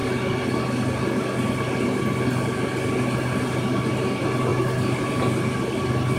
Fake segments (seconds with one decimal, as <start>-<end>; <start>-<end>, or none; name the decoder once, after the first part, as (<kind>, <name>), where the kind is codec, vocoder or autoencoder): none